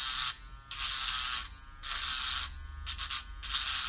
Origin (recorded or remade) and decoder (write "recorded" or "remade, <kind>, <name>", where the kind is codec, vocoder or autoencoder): recorded